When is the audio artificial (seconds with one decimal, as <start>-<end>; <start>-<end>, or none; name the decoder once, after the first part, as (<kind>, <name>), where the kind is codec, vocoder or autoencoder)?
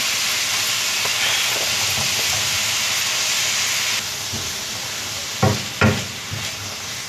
none